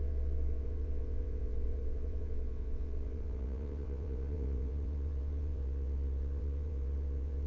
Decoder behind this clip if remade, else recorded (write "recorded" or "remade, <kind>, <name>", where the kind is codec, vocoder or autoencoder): remade, vocoder, WaveNeXt